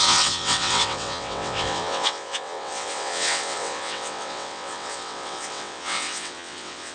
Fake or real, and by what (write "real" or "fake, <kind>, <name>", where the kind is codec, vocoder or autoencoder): fake, vocoder, WaveNeXt